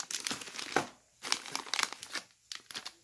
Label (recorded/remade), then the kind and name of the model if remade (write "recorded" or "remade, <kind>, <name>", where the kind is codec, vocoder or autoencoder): recorded